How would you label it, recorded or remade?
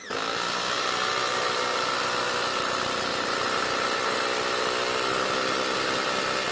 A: recorded